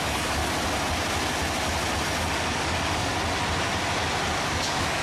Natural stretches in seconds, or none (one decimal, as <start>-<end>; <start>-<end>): 0.4-2.3; 3.1-4.4